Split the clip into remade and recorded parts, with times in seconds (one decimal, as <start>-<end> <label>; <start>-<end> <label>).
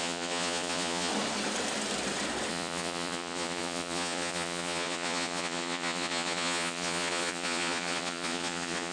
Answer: 0.0-1.1 remade; 1.1-2.5 recorded; 2.5-8.9 remade